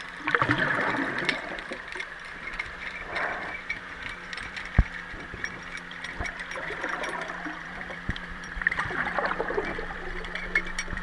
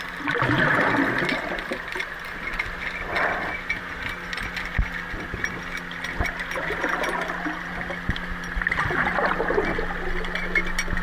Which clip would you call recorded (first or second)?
second